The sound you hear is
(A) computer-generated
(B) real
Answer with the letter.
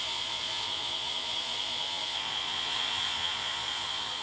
A